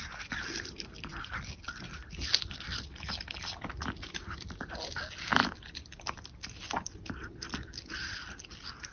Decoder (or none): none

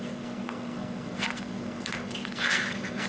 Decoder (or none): codec, SNAC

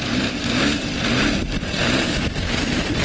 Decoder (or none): none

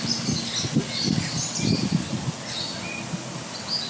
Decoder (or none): none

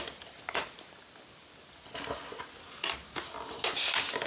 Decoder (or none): none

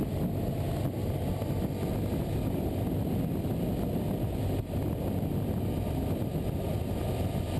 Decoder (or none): none